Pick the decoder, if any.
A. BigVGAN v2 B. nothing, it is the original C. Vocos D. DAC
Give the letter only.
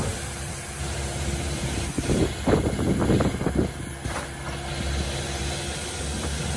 B